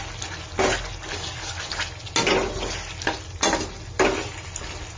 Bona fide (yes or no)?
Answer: yes